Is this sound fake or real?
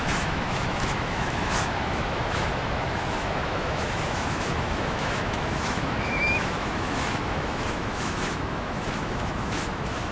fake